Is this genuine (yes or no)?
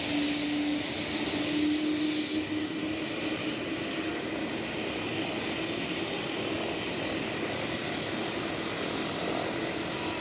yes